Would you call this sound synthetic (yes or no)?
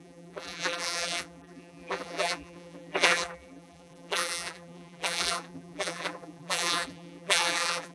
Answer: yes